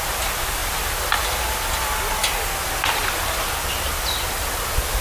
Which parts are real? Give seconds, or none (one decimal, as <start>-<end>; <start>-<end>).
0.0-5.0